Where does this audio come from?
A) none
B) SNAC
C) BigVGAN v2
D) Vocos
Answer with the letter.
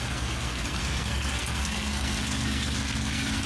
B